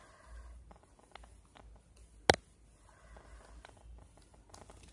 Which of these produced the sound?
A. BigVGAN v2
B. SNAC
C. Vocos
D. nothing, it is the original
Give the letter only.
D